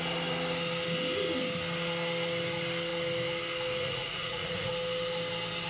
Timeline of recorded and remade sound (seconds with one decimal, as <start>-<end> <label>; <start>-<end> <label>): 0.0-3.8 recorded; 3.8-4.7 remade; 4.7-5.7 recorded